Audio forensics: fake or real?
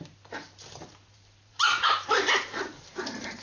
fake